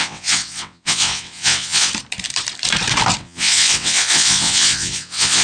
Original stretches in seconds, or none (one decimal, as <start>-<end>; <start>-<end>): 1.9-3.2